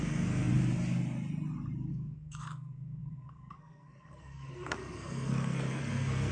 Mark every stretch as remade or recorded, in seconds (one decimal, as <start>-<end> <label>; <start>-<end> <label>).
0.0-0.5 remade; 0.5-1.9 recorded; 1.9-6.3 remade